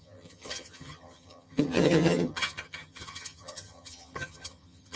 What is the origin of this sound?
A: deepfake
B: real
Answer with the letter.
A